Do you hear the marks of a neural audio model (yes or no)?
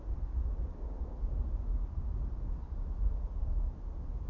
no